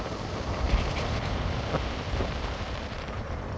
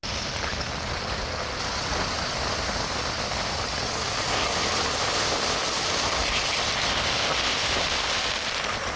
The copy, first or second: first